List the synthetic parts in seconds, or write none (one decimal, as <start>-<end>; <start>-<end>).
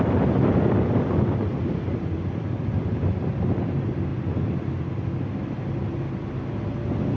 none